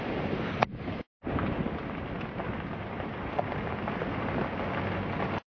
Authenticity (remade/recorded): recorded